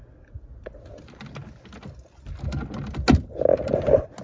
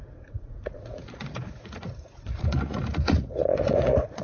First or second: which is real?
first